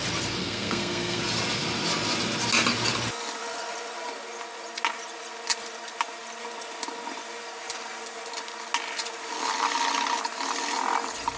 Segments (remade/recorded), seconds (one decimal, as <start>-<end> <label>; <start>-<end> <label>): 0.0-0.4 recorded; 0.4-1.2 remade; 1.2-11.4 recorded